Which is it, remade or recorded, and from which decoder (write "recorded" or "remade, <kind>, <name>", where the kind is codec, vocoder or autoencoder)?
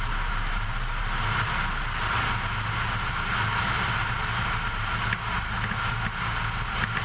recorded